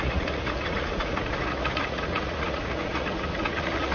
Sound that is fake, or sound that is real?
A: fake